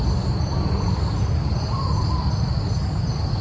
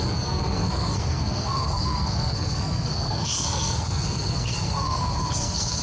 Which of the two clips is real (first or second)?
first